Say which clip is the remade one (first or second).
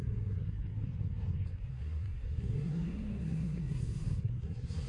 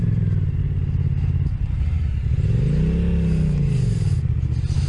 first